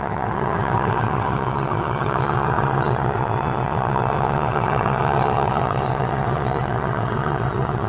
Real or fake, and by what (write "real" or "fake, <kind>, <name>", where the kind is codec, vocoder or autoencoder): fake, vocoder, WaveNeXt